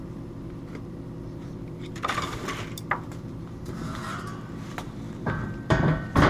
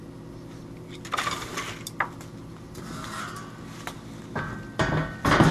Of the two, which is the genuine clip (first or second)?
second